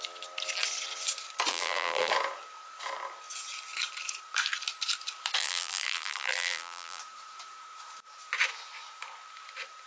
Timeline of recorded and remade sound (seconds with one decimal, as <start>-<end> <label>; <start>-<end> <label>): 0.0-1.5 recorded; 1.5-2.1 remade; 2.1-5.4 recorded; 5.4-7.0 remade; 7.0-9.9 recorded